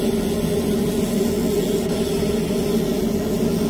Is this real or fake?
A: real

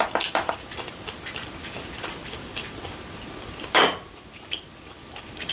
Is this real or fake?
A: fake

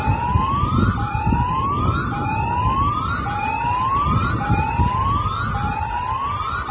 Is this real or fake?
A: real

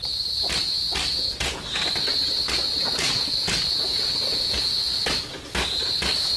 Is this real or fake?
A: real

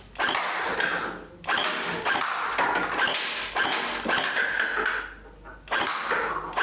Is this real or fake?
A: real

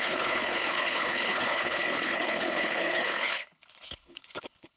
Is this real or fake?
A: fake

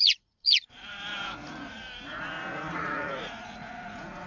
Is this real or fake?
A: fake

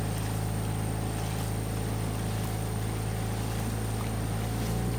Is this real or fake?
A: real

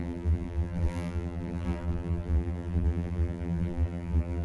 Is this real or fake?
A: fake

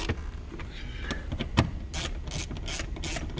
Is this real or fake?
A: real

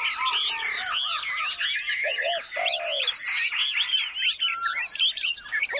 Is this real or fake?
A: real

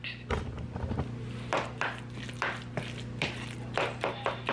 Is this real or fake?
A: real